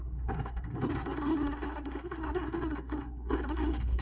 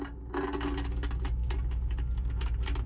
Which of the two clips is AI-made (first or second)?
first